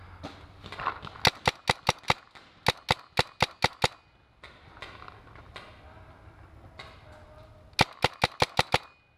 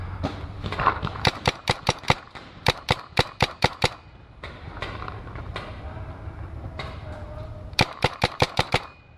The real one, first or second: first